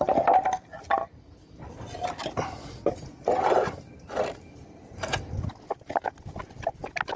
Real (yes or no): yes